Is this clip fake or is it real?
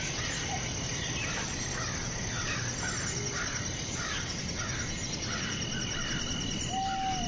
real